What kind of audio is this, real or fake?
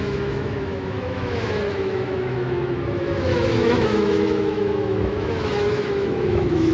fake